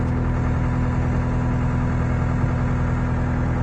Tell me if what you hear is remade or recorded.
recorded